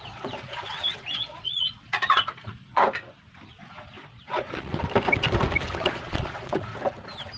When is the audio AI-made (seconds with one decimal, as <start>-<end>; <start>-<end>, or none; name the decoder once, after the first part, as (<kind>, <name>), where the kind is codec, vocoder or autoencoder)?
0.0-2.8 (vocoder, Vocos); 3.6-4.7; 5.8-6.7